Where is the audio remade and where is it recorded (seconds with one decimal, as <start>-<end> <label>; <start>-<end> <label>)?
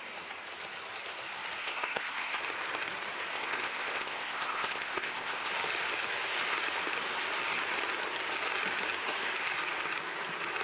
0.0-1.6 recorded; 1.6-2.4 remade; 2.4-3.3 recorded; 3.3-5.5 remade; 5.5-10.6 recorded